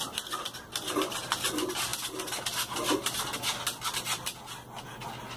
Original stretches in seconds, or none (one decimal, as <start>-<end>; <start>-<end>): 0.0-5.4